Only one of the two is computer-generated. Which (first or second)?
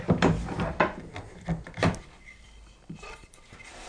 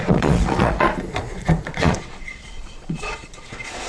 second